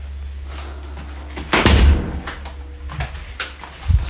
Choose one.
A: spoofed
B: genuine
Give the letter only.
B